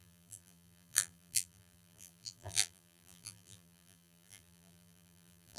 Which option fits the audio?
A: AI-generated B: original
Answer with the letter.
A